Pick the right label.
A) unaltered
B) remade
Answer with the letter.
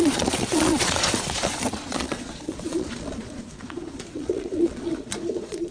B